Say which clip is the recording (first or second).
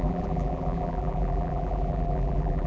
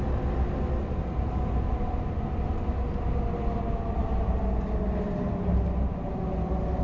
second